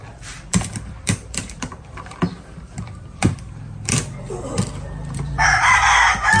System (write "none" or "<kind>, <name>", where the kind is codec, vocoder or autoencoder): vocoder, BigVGAN v2